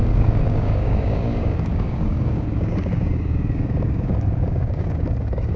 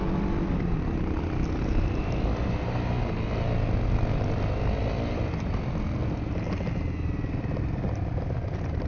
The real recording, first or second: second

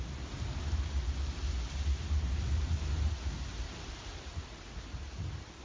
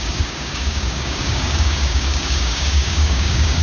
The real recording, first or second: first